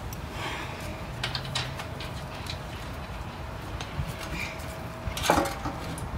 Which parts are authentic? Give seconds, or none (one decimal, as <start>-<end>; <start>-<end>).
0.0-0.9; 4.6-6.2